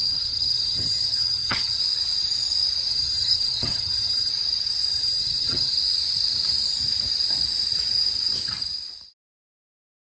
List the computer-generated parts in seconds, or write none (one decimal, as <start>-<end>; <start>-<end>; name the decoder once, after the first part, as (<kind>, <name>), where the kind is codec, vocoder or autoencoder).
0.0-1.8 (vocoder, HiFi-GAN); 2.9-4.3; 4.9-5.7

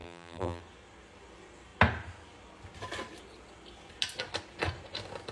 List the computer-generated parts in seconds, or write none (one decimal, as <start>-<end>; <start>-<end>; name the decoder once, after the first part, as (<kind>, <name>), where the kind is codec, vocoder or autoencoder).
0.0-0.6 (vocoder, BigVGAN v2)

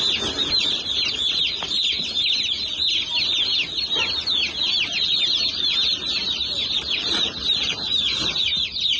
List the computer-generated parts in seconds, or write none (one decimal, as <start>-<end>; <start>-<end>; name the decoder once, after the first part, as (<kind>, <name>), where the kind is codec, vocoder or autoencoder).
0.0-1.8 (vocoder, BigVGAN v2); 4.5-9.0

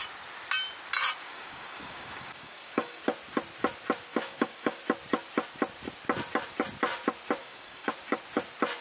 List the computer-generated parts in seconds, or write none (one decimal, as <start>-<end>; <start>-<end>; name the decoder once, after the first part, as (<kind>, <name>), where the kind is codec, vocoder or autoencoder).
1.2-3.0 (codec, DAC); 4.1-4.8; 7.4-7.9

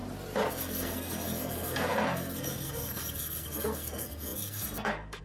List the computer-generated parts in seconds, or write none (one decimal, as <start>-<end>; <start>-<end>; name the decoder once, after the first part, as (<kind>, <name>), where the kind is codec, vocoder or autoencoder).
0.5-5.2 (codec, SNAC)

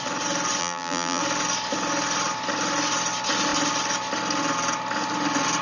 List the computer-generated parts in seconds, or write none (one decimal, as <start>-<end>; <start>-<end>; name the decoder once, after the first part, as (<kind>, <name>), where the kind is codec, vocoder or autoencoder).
0.6-1.2 (vocoder, BigVGAN v2)